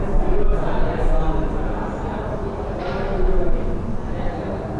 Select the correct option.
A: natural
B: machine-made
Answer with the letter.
A